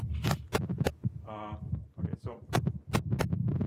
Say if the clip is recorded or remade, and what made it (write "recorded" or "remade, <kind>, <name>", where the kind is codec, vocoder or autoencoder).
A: recorded